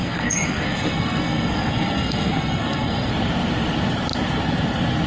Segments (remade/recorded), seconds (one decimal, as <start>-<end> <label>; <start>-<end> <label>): 0.0-3.1 remade; 3.1-5.1 recorded